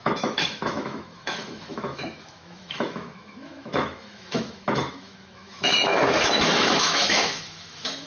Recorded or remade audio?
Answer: remade